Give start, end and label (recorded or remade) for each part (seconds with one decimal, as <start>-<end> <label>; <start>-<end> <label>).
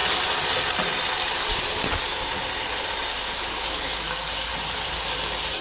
0.0-3.4 recorded; 3.4-4.5 remade; 4.5-5.6 recorded